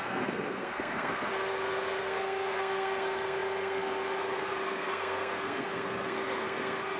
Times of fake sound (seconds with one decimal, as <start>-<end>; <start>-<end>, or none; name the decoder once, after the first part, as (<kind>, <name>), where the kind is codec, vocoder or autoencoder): 0.0-7.0 (codec, SNAC)